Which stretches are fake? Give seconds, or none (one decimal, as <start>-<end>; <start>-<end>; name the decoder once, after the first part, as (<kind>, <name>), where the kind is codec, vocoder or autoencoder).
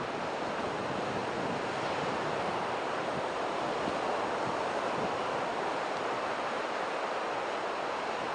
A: none